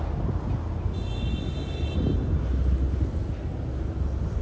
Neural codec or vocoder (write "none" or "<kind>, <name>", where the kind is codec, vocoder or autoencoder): none